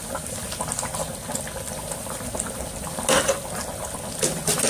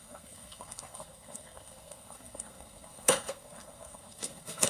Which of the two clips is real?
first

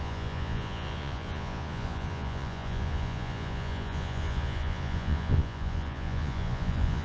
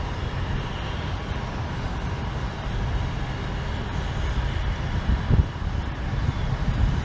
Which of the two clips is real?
second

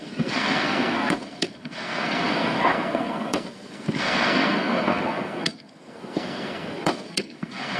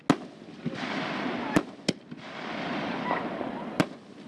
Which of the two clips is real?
second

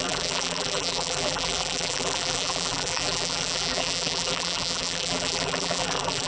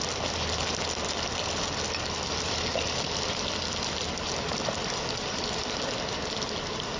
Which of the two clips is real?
second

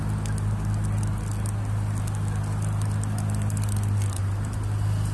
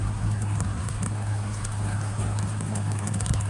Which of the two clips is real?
first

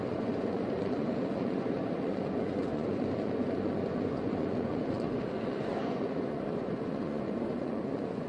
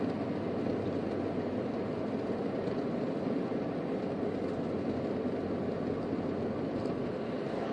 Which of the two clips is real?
second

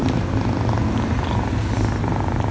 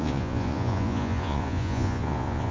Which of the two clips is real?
first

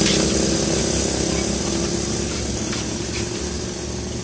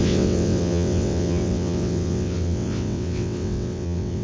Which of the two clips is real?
first